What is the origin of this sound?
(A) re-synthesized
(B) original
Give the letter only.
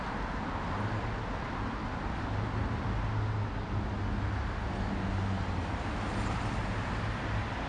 B